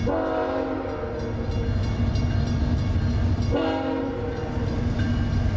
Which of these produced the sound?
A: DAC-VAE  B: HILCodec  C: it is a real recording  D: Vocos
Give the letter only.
C